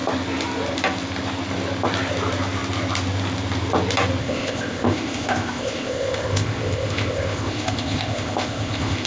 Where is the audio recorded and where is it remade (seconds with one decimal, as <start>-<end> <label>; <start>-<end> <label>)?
0.0-4.2 recorded; 4.2-9.1 remade